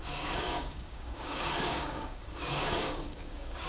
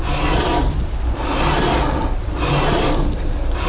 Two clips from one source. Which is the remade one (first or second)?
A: first